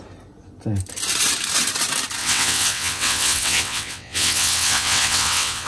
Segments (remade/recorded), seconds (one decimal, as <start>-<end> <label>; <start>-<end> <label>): 0.0-2.2 recorded; 2.2-5.7 remade